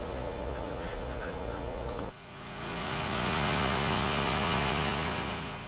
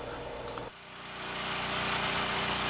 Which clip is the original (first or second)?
second